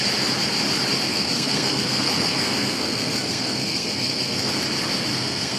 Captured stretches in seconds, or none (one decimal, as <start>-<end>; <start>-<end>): 0.0-1.1; 4.5-5.1

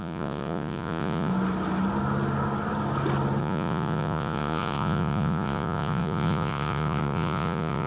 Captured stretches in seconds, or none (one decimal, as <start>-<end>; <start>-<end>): 1.3-3.4

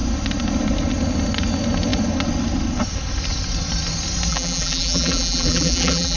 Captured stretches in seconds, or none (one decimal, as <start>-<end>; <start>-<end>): 0.0-4.3